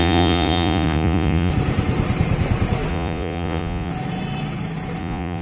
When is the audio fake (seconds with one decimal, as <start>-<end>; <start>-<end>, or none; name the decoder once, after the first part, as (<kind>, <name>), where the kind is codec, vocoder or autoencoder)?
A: 0.0-1.5 (vocoder, Vocos); 2.9-3.9; 5.0-5.4